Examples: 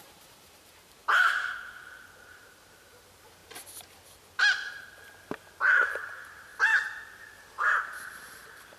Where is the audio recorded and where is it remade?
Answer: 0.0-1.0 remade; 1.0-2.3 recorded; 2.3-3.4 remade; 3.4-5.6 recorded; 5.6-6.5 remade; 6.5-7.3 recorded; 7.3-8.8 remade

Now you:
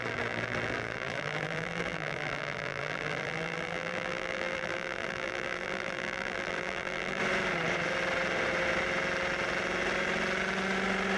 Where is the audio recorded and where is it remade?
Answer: 0.0-7.2 remade; 7.2-11.2 recorded